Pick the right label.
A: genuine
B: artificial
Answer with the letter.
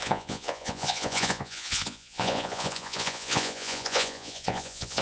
B